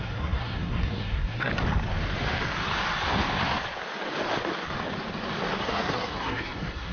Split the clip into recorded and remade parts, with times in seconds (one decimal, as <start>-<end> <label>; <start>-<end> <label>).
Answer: 0.0-1.5 remade; 1.5-5.6 recorded; 5.6-6.9 remade